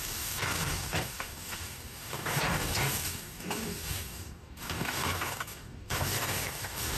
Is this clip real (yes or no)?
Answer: no